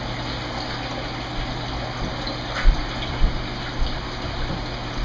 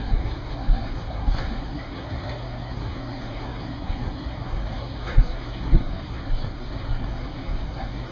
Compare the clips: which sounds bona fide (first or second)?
first